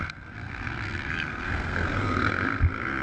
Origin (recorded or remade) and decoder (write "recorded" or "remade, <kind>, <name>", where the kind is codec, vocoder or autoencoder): remade, codec, SNAC